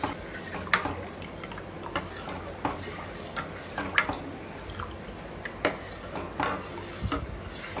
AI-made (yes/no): no